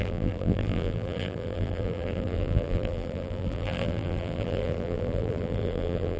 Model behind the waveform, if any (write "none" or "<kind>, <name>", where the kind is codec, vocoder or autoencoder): vocoder, BigVGAN v2